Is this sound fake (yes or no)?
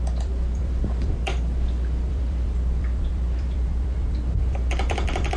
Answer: yes